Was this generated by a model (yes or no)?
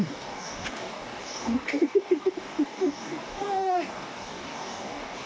yes